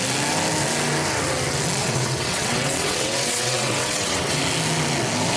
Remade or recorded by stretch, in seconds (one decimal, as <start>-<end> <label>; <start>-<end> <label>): 0.0-1.8 recorded; 1.8-4.4 remade; 4.4-5.4 recorded